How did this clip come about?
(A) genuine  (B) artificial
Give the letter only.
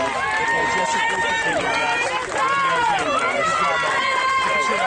A